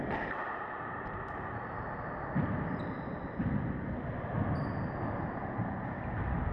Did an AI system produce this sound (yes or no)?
no